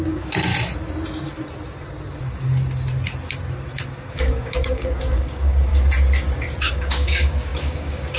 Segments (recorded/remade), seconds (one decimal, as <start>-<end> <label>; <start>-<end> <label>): 0.0-0.5 remade; 0.5-4.1 recorded; 4.1-5.7 remade; 5.7-6.7 recorded; 6.7-8.2 remade